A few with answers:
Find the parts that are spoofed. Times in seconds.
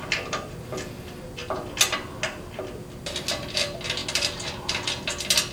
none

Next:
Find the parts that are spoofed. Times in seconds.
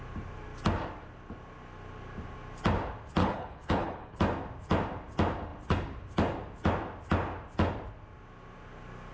3.2-4.2 (codec, HILCodec)